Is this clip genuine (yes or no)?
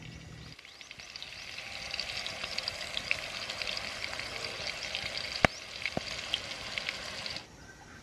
yes